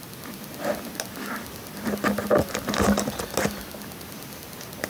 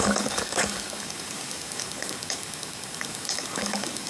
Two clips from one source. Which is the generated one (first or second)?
second